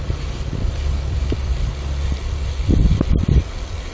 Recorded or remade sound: recorded